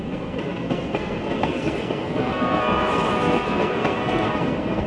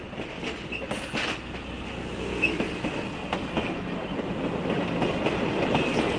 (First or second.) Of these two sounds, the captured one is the second